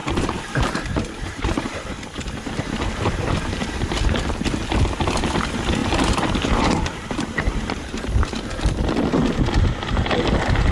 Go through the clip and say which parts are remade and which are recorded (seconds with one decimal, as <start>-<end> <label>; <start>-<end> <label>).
0.0-4.2 remade; 4.2-5.8 recorded; 5.8-8.0 remade; 8.0-10.7 recorded